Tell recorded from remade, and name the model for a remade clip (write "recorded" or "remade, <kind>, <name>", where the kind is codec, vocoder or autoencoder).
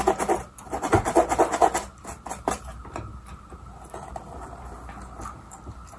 recorded